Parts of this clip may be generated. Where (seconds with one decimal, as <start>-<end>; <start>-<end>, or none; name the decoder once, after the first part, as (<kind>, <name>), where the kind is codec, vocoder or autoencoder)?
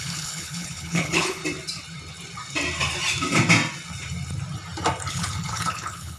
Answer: 0.0-1.4 (codec, HILCodec); 5.1-6.2